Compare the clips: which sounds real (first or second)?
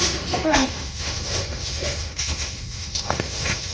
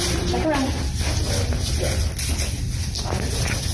second